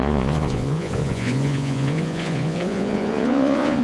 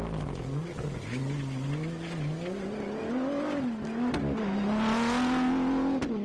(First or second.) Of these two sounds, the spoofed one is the first